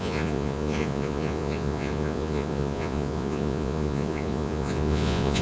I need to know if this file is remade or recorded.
remade